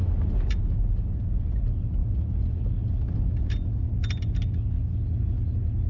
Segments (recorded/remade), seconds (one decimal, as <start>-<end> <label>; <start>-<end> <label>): 0.0-5.9 recorded